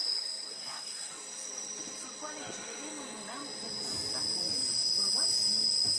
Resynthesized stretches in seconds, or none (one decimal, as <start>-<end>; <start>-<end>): 0.5-1.1